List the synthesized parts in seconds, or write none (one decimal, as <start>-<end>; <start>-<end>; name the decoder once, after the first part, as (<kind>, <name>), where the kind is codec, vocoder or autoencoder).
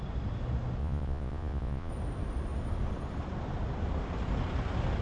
0.8-1.9 (vocoder, Vocos)